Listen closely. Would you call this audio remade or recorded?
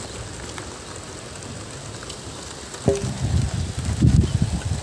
recorded